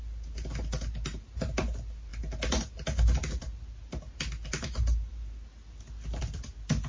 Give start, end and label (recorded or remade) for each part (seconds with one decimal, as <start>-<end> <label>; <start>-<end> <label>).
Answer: 0.0-6.9 recorded